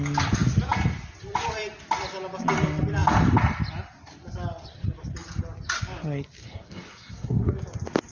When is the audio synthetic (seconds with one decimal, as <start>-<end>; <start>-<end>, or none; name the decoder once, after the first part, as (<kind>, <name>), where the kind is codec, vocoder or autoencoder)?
6.4-7.5 (codec, SNAC)